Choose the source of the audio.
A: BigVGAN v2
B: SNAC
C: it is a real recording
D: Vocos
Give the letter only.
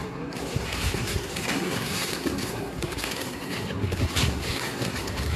B